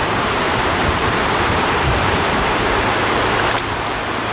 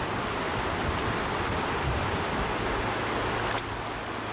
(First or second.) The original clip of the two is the second